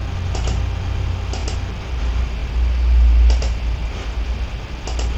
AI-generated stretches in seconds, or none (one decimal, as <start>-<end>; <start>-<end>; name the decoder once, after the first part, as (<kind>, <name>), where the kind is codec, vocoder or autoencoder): none